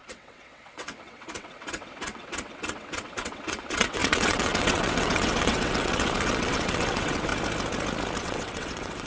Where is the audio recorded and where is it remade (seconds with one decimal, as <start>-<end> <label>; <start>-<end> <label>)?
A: 0.0-7.3 remade; 7.3-8.2 recorded; 8.2-9.1 remade